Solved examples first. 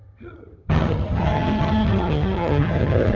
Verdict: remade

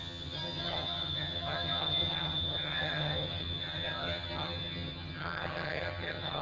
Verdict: remade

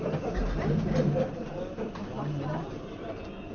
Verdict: recorded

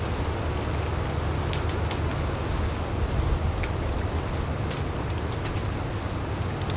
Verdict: recorded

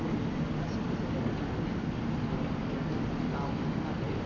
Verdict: recorded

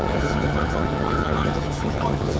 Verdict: remade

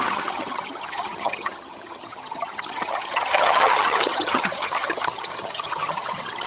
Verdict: remade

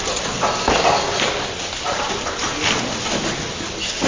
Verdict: recorded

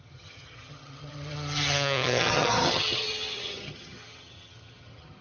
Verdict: remade